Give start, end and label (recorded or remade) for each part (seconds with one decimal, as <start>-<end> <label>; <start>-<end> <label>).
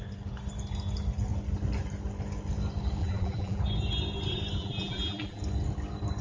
0.0-3.0 recorded; 3.0-3.6 remade; 3.6-4.6 recorded; 4.6-5.4 remade; 5.4-6.2 recorded